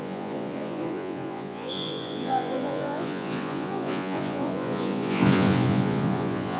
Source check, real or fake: fake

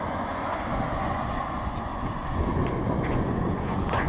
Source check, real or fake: fake